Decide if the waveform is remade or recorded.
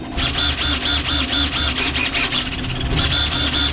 recorded